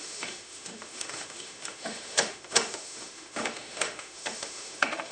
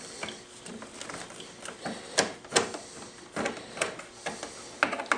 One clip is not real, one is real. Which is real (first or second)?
second